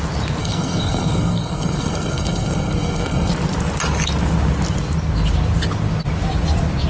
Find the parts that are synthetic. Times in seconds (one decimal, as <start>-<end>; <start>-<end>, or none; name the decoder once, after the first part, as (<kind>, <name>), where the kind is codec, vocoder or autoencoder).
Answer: 0.4-3.3 (codec, SNAC)